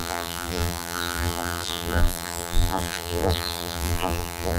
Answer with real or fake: fake